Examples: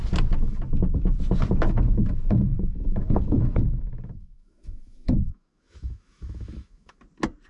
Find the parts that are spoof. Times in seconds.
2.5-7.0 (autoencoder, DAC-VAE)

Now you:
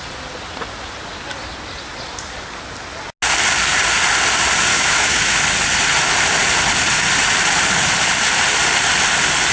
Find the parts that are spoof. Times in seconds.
4.7-5.4 (autoencoder, DAC-VAE)

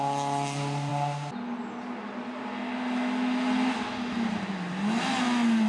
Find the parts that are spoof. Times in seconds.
none

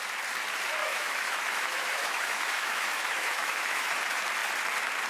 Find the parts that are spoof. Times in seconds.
0.8-3.9 (autoencoder, DAC-VAE)

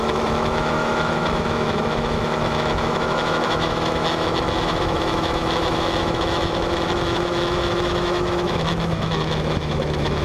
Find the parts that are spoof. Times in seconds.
0.0-10.2 (autoencoder, DAC-VAE)